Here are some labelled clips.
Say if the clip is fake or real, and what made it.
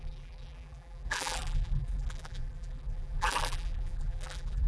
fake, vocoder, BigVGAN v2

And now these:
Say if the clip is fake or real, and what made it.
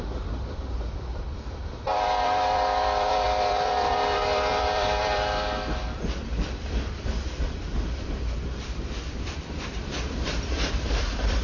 fake, vocoder, BigVGAN v2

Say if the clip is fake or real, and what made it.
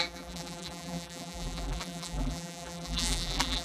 fake, vocoder, BigVGAN v2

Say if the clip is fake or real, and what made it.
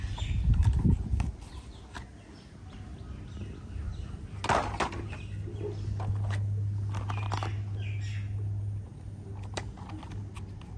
real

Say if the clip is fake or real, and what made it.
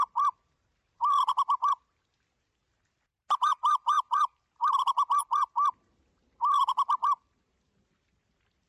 real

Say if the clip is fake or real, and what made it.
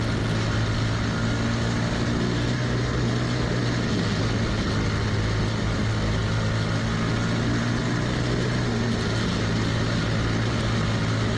real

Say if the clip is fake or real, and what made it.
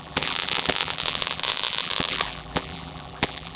fake, vocoder, BigVGAN v2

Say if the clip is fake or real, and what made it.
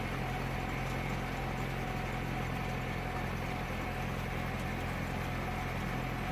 real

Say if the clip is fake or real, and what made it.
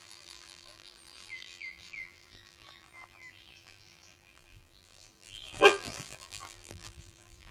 fake, vocoder, BigVGAN v2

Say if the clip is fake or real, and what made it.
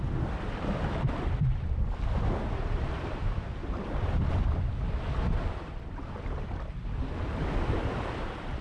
fake, vocoder, BigVGAN v2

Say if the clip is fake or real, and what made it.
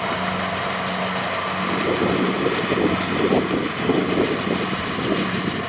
real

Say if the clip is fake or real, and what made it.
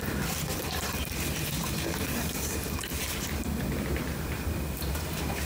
fake, vocoder, BigVGAN v2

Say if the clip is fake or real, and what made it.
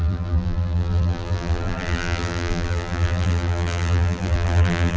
fake, vocoder, BigVGAN v2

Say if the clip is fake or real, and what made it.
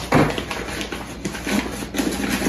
real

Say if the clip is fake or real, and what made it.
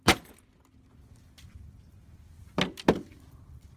real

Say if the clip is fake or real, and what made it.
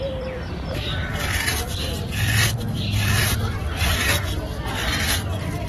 fake, vocoder, BigVGAN v2